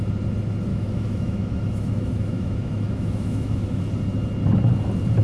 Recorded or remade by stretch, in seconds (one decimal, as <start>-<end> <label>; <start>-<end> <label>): 0.0-0.7 recorded; 0.7-3.8 remade; 3.8-5.2 recorded